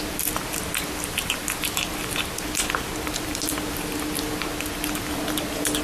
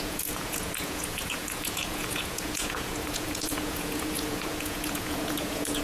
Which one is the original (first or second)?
first